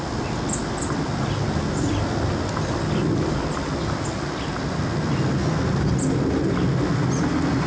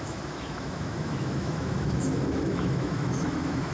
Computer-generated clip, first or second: second